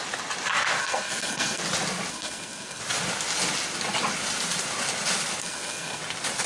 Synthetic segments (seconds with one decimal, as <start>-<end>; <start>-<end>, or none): 0.8-1.6; 2.1-2.8; 5.4-6.0